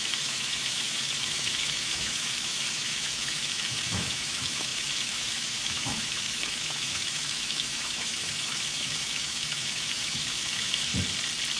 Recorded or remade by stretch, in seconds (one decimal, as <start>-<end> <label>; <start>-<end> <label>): 0.0-10.9 remade; 10.9-11.6 recorded